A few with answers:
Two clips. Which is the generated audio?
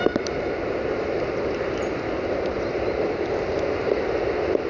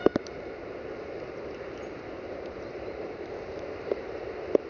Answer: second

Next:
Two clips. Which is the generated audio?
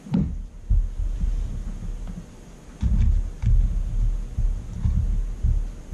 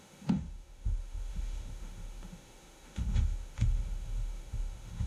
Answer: second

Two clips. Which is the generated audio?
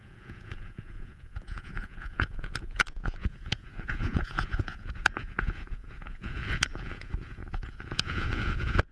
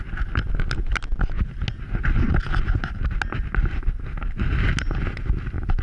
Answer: first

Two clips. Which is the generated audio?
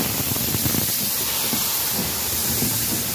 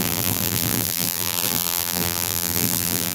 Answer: second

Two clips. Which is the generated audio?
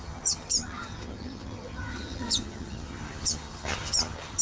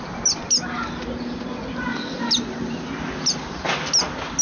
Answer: first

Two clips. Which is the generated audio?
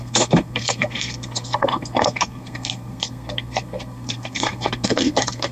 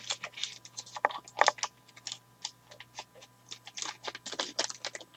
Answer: first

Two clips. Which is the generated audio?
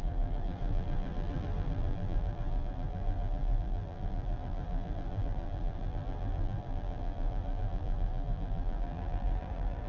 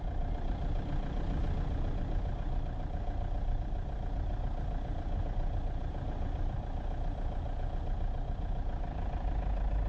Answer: first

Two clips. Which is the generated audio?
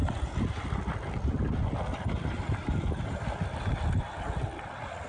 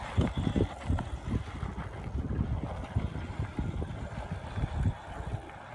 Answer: first